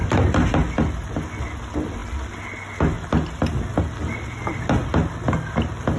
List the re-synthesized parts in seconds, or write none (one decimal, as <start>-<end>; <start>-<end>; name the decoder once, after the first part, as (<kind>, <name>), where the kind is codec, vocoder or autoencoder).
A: none

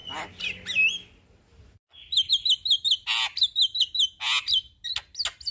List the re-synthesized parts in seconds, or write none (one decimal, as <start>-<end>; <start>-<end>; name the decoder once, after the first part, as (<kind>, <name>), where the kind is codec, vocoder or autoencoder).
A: none

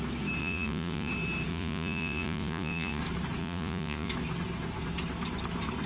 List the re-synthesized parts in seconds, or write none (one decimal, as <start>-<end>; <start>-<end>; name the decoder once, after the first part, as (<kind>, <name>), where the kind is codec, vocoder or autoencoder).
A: 0.4-1.1 (vocoder, Vocos); 1.5-3.0; 3.4-4.1

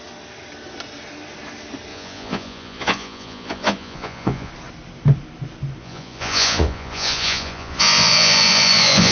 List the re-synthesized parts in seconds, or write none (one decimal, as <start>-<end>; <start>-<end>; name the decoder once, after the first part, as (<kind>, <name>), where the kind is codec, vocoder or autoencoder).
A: 1.9-4.5 (vocoder, Vocos); 5.8-9.1

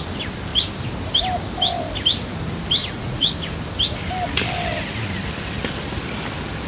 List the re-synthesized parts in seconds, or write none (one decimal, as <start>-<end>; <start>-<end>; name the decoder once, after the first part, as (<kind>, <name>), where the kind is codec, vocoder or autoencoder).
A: 2.8-3.3 (vocoder, Vocos)

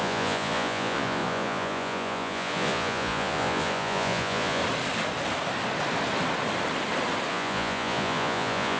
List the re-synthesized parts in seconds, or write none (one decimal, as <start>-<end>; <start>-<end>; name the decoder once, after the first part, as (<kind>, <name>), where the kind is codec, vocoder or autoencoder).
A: 0.0-4.6 (vocoder, Vocos); 7.3-8.8

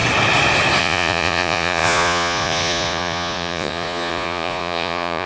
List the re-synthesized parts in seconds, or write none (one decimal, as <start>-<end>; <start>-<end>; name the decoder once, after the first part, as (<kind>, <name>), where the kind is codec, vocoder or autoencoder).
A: 0.8-5.3 (vocoder, Vocos)

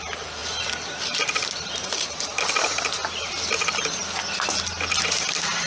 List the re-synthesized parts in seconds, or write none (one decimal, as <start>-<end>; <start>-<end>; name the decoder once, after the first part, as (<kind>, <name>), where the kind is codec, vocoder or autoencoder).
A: none